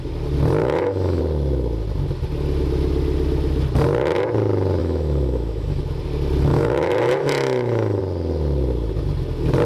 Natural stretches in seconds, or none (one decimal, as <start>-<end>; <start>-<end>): 0.0-0.6; 1.2-4.8; 5.8-6.5; 8.0-9.7

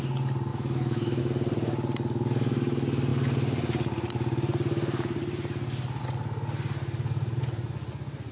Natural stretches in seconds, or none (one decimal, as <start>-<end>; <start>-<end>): 0.0-0.5; 1.2-8.3

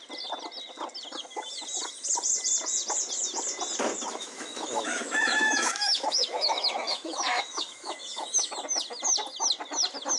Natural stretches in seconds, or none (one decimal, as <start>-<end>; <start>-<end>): 0.0-4.1; 8.5-10.2